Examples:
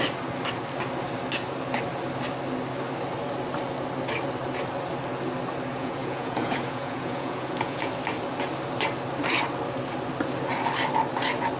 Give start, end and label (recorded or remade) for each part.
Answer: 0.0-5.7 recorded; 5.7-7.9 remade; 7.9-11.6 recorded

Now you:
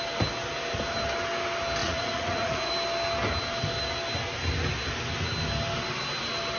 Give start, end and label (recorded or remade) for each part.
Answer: 0.0-1.8 recorded; 1.8-2.7 remade; 2.7-6.6 recorded

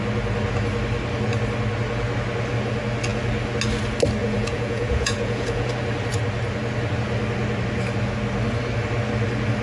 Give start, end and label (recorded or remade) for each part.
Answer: 0.0-4.2 recorded; 4.2-5.7 remade; 5.7-9.6 recorded

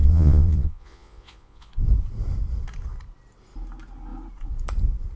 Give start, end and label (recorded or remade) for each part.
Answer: 0.0-1.7 remade; 1.7-5.2 recorded

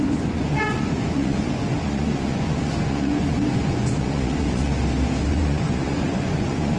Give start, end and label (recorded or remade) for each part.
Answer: 0.0-4.7 remade; 4.7-5.3 recorded; 5.3-6.8 remade